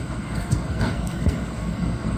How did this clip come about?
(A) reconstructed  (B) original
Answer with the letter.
A